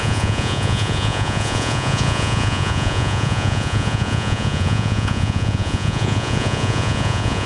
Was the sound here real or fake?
fake